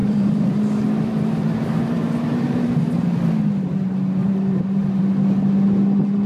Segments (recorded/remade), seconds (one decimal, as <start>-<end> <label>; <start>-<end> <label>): 0.0-2.9 remade; 2.9-4.2 recorded; 4.2-5.0 remade; 5.0-6.3 recorded